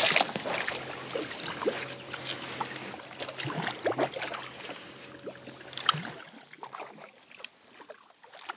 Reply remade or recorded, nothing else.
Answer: recorded